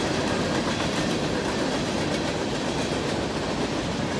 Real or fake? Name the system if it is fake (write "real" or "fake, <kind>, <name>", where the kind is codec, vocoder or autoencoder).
real